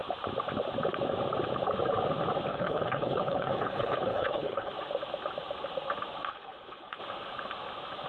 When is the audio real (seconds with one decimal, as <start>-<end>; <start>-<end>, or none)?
0.0-2.5; 4.7-6.3; 7.0-8.1